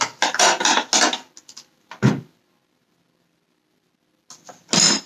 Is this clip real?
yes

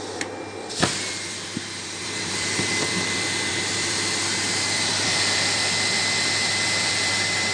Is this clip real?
no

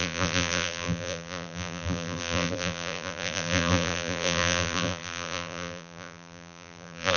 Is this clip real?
no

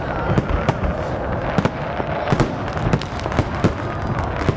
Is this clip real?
yes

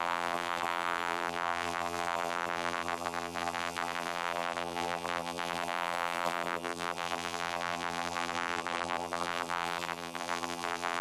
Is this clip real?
no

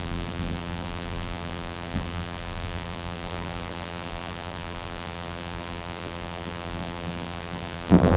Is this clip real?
no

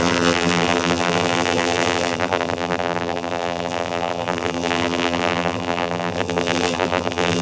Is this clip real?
no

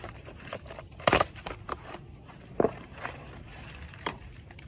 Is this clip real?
no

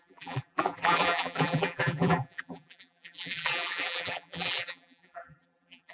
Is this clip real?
no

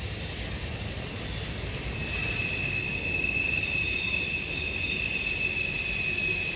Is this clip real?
yes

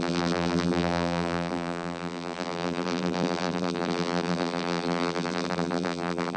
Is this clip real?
no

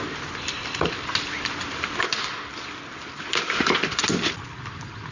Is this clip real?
no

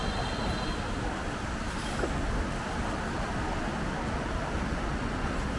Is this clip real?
yes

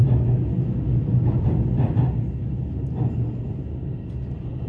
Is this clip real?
yes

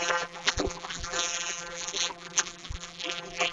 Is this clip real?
no